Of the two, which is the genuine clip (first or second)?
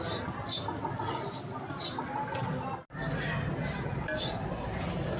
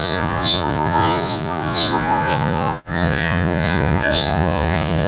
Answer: first